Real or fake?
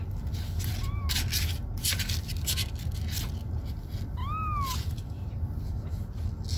real